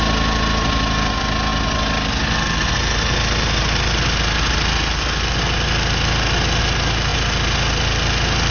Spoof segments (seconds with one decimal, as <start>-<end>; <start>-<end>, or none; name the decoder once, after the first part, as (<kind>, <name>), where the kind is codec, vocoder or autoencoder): none